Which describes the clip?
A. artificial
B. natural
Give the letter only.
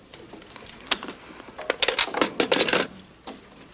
B